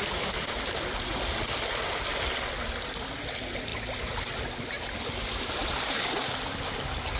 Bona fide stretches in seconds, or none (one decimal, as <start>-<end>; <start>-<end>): 3.7-4.4